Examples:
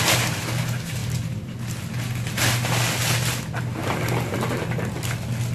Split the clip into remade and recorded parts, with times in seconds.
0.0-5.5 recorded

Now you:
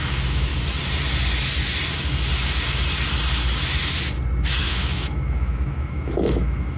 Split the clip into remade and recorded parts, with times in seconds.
0.0-0.5 remade; 0.5-4.6 recorded; 4.6-6.8 remade

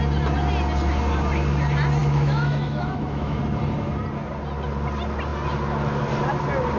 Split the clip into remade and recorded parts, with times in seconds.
0.0-2.0 recorded; 2.0-3.4 remade; 3.4-6.8 recorded